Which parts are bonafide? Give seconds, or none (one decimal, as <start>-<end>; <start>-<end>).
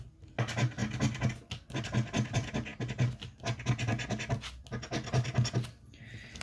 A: 0.0-6.4